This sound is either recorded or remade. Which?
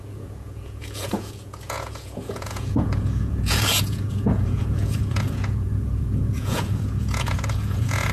remade